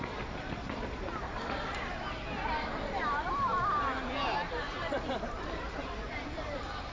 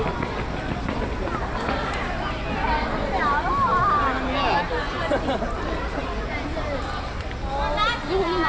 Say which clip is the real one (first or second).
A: second